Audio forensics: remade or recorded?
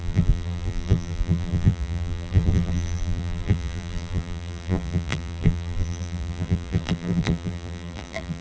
remade